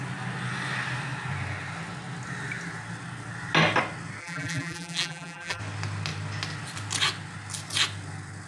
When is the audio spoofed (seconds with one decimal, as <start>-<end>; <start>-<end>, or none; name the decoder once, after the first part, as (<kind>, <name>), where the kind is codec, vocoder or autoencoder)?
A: 4.2-5.6 (vocoder, BigVGAN v2)

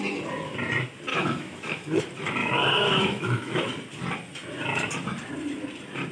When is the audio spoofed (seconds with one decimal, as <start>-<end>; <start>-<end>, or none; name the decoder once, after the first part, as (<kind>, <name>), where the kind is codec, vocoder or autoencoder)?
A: 1.1-2.0 (autoencoder, DAC-VAE); 2.4-3.7

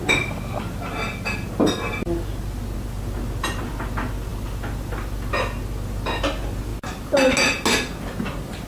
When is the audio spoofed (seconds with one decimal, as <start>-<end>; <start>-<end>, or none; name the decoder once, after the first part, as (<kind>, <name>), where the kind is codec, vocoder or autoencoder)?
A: 4.3-5.3 (vocoder, BigVGAN v2)